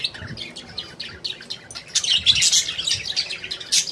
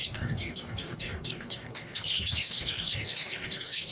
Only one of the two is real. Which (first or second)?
first